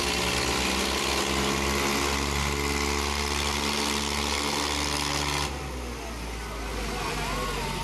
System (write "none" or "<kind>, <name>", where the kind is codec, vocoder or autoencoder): none